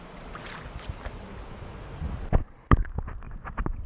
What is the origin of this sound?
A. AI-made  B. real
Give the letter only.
B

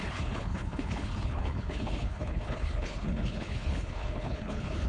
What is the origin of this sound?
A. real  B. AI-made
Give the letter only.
B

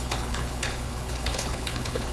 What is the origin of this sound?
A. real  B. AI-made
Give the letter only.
B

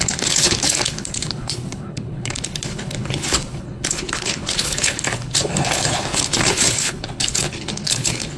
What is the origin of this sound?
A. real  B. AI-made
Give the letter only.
B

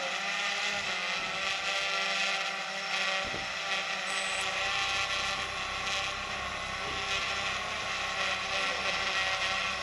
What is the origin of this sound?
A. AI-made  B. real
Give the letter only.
B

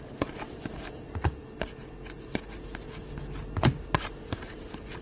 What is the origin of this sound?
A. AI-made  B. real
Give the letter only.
B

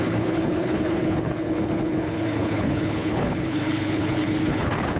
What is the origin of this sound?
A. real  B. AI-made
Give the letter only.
B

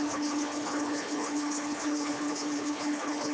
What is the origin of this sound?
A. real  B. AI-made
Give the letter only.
B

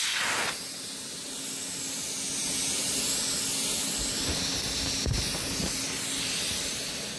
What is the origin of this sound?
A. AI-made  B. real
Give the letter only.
B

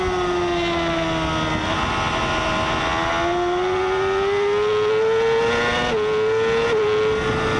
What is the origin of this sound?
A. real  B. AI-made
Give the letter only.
A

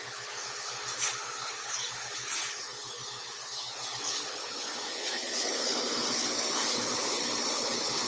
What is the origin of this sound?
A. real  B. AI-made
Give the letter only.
B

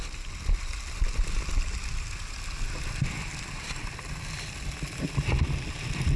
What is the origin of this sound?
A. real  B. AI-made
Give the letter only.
A